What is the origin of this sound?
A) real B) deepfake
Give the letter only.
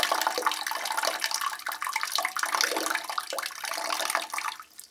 A